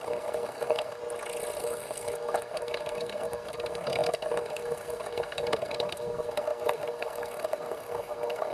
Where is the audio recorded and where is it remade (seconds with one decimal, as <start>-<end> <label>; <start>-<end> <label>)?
0.0-1.0 remade; 1.0-1.6 recorded; 1.6-8.5 remade